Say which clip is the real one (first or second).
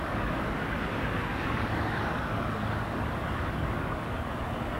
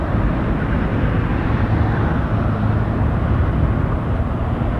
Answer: second